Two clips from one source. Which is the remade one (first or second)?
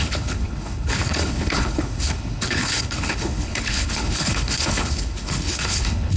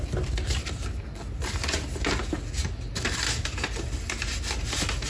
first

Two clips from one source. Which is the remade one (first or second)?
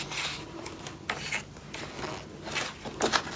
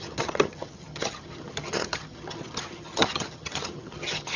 second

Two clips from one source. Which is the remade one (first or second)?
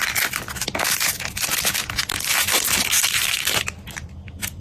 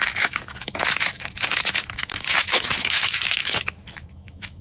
second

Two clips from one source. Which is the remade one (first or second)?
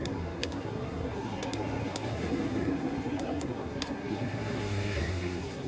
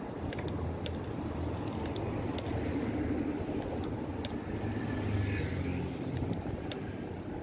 first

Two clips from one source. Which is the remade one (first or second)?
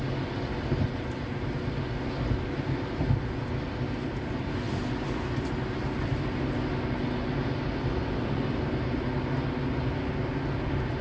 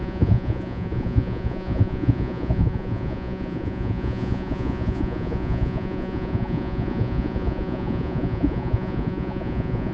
second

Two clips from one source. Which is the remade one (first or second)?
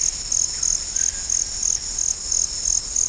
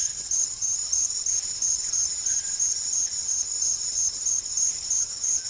second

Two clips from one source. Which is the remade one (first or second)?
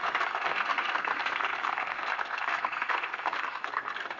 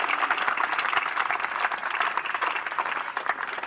first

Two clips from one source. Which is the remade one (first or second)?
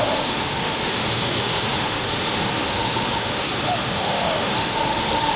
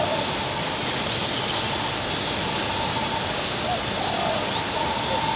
first